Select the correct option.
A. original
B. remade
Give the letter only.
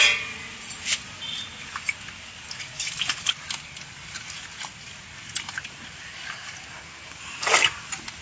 A